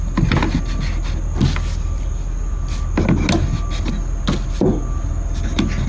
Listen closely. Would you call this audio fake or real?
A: real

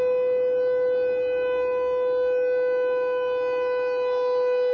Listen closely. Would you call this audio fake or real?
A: real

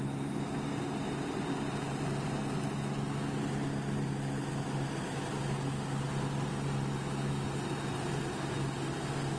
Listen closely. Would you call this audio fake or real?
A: real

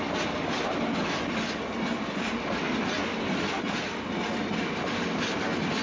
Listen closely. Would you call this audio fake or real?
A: real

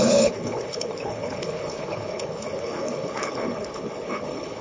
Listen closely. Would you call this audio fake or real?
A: fake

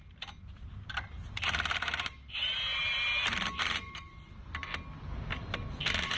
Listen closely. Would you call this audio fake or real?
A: real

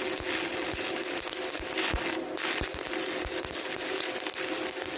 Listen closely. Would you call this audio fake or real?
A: real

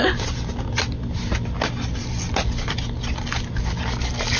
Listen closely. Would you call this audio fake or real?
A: real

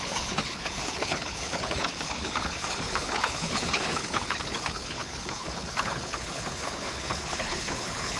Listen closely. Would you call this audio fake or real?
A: fake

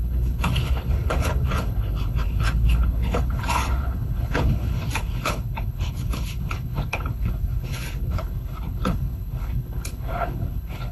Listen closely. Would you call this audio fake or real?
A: fake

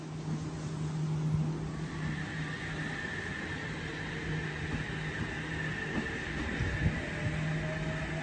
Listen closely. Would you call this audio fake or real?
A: real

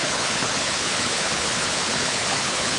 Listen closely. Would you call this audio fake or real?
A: fake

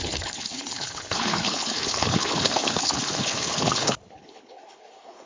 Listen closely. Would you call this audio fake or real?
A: fake